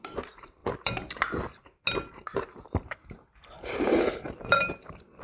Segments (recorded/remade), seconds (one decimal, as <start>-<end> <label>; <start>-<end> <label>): 0.0-0.6 remade; 0.6-2.1 recorded; 2.1-5.2 remade